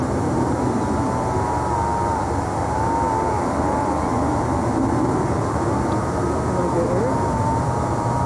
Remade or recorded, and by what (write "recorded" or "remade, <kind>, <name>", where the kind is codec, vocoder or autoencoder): recorded